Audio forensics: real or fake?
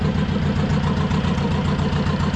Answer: real